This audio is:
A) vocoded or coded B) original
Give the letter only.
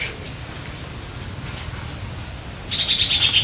B